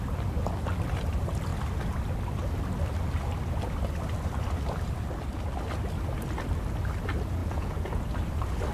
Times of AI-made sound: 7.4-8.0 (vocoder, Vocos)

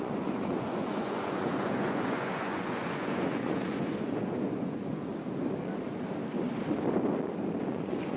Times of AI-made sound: 0.0-5.1 (vocoder, Vocos); 7.7-8.2